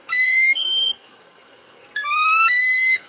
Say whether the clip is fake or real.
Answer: fake